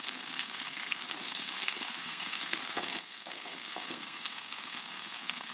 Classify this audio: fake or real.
fake